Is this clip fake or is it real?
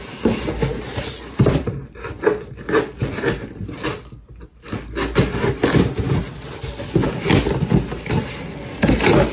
real